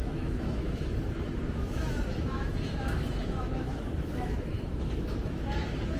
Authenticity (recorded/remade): remade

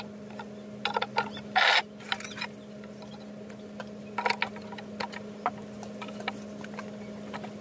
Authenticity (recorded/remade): recorded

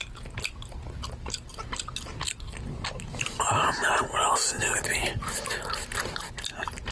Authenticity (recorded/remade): recorded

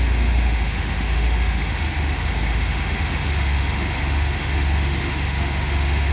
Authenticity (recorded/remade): remade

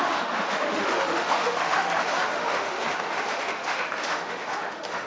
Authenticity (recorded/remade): remade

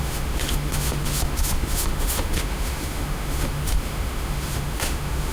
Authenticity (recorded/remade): remade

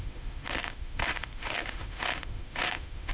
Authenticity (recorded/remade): remade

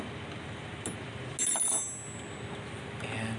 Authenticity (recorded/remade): recorded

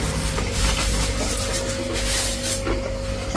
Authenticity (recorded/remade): recorded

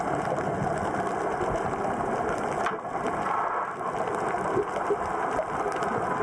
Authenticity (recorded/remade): recorded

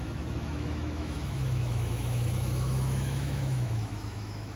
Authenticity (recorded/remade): remade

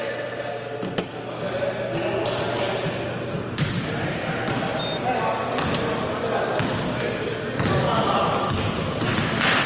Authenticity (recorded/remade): recorded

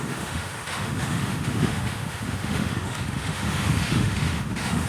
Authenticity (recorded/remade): remade